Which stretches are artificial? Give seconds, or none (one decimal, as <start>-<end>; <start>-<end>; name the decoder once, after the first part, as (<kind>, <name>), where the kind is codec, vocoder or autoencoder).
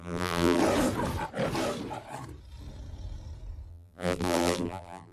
0.0-0.6 (vocoder, BigVGAN v2); 3.7-5.1